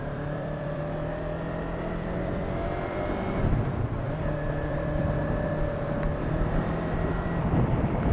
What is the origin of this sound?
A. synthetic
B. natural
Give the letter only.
A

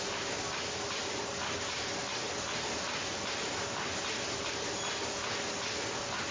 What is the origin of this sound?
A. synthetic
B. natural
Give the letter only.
B